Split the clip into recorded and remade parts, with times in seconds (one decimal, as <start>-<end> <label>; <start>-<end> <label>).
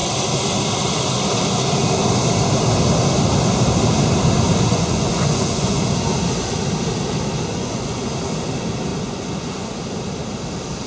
0.0-4.7 recorded; 4.7-5.8 remade; 5.8-7.5 recorded; 7.5-8.1 remade; 8.1-8.9 recorded; 8.9-9.8 remade; 9.8-10.9 recorded